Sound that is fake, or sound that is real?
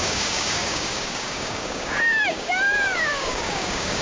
fake